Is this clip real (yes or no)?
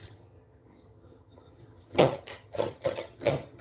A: no